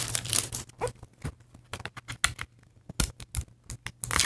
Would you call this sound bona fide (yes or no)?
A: yes